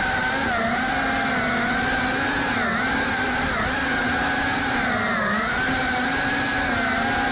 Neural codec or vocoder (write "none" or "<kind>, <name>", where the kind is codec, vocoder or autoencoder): none